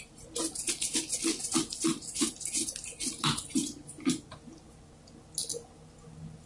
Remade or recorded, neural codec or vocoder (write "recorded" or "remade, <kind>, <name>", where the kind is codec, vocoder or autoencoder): recorded